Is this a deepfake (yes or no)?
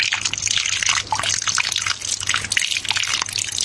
no